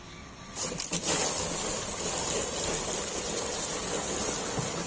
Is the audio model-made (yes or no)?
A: no